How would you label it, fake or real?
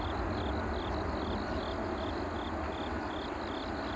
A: real